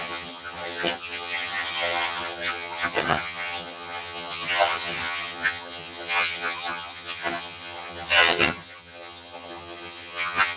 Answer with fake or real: fake